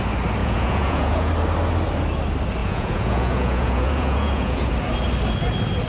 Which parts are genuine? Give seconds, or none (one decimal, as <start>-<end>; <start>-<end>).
0.0-0.4; 1.3-2.6; 4.7-5.9